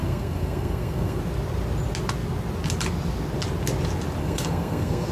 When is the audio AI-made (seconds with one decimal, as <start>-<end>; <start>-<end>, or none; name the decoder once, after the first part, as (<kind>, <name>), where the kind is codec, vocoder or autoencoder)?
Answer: 0.0-1.2 (codec, SNAC); 4.2-5.1